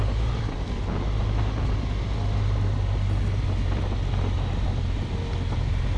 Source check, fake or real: real